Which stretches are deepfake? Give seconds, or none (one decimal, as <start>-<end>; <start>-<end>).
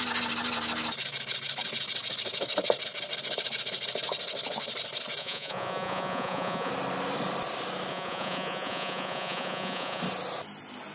5.2-6.7; 7.9-10.0